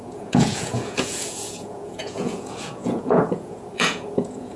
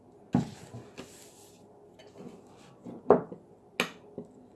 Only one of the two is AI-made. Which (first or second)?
first